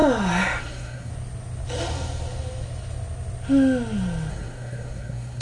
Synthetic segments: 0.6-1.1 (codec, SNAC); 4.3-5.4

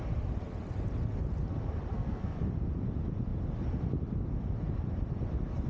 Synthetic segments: 1.9-2.4 (codec, SNAC)

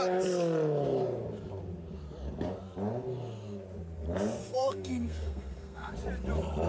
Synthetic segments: 4.4-5.9 (codec, SNAC)

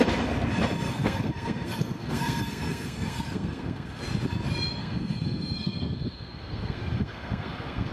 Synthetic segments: 0.9-4.0 (codec, SNAC); 4.8-7.9

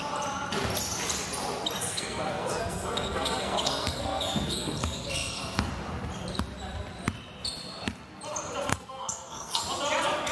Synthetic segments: 1.8-5.7 (codec, SNAC); 8.7-9.6